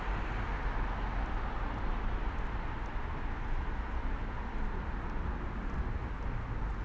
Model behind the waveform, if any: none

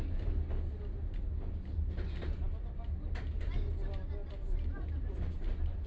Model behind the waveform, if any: none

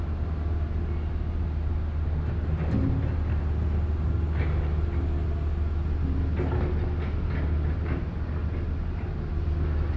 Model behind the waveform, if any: none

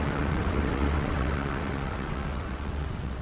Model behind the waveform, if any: vocoder, WaveNeXt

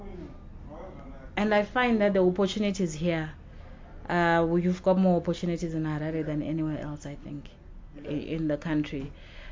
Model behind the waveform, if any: none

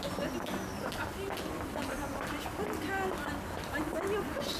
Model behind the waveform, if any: none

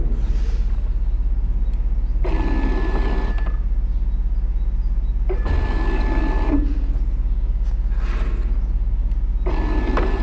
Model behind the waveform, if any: none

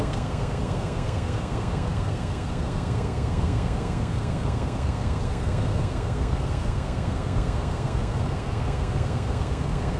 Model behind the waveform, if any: codec, SNAC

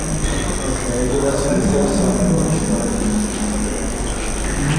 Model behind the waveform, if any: none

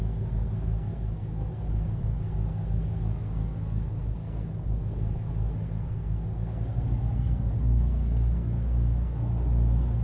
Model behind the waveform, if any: codec, SNAC